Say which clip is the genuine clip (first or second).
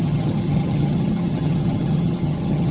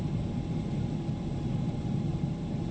second